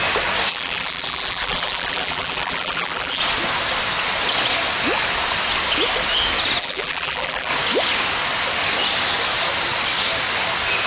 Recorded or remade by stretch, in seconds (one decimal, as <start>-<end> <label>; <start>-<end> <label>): 0.0-0.5 recorded; 0.5-3.2 remade; 3.2-6.6 recorded; 6.6-7.5 remade; 7.5-10.9 recorded